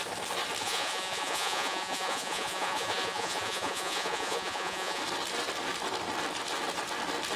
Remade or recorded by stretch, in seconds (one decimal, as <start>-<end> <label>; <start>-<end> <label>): 0.0-0.6 recorded; 0.6-5.0 remade; 5.0-7.4 recorded